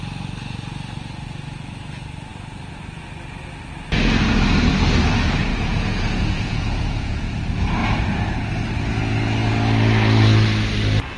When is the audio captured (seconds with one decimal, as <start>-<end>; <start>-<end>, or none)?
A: 0.0-5.5; 7.3-11.2